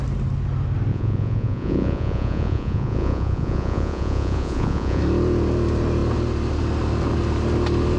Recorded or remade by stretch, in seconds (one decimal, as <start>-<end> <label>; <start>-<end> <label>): 0.0-0.9 recorded; 0.9-5.0 remade; 5.0-8.0 recorded